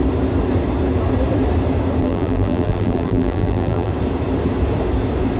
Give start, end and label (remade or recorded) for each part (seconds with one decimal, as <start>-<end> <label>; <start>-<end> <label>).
0.0-2.0 recorded; 2.0-3.9 remade; 3.9-5.4 recorded